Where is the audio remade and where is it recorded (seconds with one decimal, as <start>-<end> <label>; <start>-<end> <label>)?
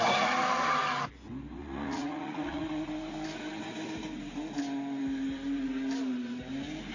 0.0-1.6 recorded; 1.6-2.6 remade; 2.6-6.9 recorded